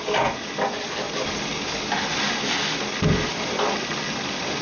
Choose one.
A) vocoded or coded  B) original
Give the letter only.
B